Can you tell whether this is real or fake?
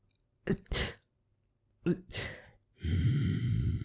real